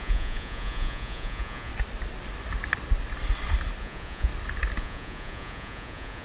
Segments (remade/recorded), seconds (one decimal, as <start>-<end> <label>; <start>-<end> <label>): 0.0-1.7 remade; 1.7-3.8 recorded; 3.8-4.3 remade; 4.3-4.8 recorded; 4.8-6.2 remade